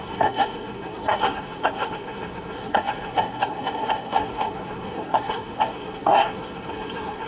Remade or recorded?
remade